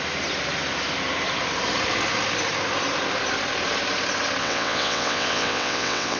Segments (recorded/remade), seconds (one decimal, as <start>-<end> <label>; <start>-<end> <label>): 0.0-4.4 recorded; 4.4-6.2 remade